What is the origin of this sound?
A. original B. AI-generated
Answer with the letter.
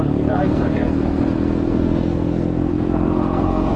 B